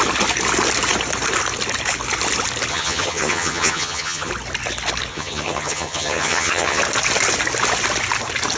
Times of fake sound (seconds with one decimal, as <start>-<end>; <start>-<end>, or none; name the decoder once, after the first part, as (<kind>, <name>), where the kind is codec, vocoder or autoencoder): 2.7-4.3 (vocoder, HiFi-GAN); 5.1-6.8